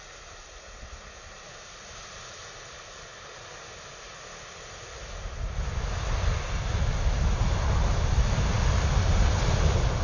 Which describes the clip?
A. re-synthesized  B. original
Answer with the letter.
B